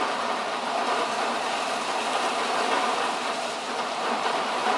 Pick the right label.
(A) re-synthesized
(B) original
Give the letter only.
A